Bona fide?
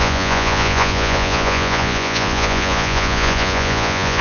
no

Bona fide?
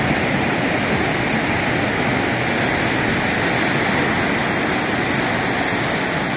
yes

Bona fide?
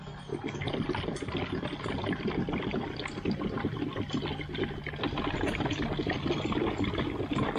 yes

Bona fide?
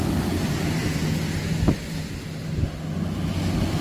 yes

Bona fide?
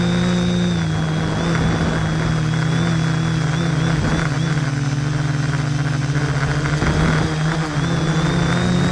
yes